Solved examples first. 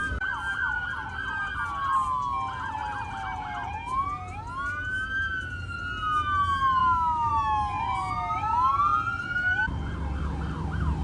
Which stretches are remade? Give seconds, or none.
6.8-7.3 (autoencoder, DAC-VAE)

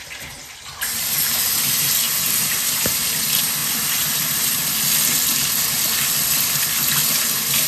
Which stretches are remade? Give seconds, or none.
none

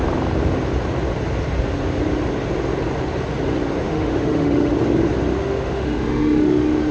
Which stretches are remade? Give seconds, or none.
3.8-4.7 (autoencoder, DAC-VAE); 5.3-6.9

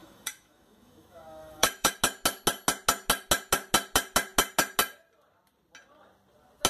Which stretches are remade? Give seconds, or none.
0.0-1.9 (autoencoder, DAC-VAE)

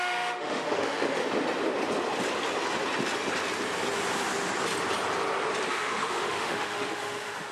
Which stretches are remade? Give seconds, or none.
0.0-1.2 (autoencoder, DAC-VAE); 5.7-7.5

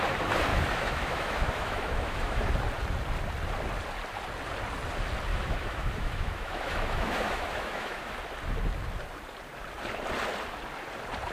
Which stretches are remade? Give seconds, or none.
0.5-2.5 (autoencoder, DAC-VAE); 5.3-8.1

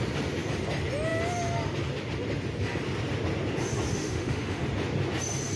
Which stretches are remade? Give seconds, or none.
3.9-4.6 (autoencoder, DAC-VAE)